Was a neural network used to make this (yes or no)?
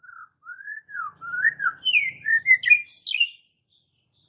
no